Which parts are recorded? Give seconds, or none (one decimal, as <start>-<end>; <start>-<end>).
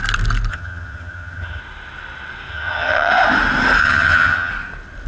0.0-0.5; 1.6-2.5; 3.1-3.8; 4.5-5.1